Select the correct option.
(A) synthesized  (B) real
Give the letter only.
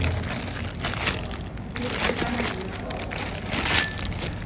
B